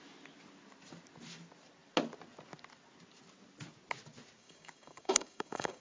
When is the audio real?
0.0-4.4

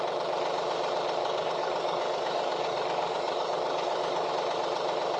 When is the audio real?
0.0-1.2; 4.3-5.2

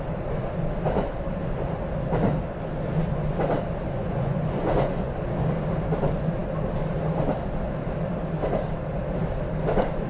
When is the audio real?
0.0-4.0; 5.1-10.1

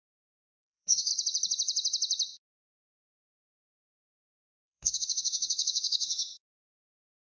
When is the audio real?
1.1-2.6

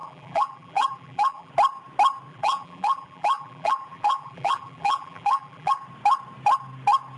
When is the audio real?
1.5-2.3; 5.7-7.2

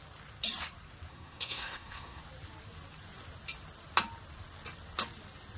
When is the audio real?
0.0-1.1; 2.2-5.6

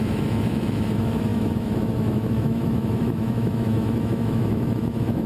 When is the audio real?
none

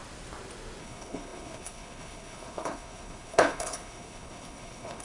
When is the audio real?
0.0-0.8